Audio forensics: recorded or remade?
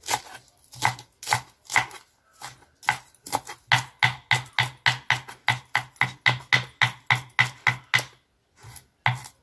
recorded